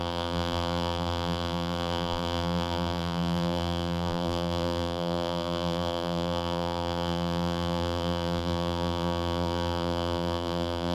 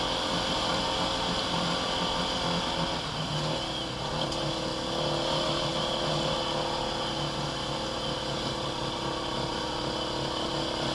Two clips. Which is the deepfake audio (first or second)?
first